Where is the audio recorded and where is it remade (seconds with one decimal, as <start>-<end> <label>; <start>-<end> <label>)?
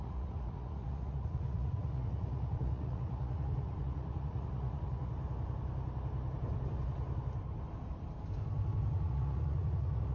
0.0-5.1 remade; 5.1-8.9 recorded; 8.9-10.1 remade